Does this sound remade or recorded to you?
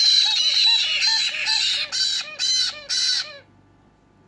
recorded